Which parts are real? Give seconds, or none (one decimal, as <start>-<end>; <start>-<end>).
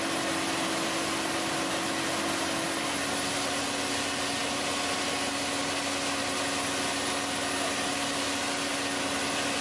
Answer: 0.0-9.6